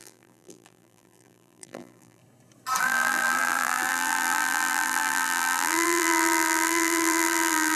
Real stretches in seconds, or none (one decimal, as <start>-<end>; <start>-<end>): 2.2-2.8